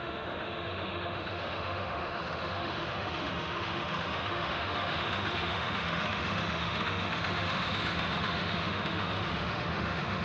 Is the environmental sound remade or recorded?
remade